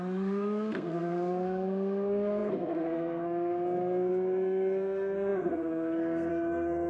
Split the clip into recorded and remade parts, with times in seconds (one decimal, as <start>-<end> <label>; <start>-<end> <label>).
0.0-6.9 remade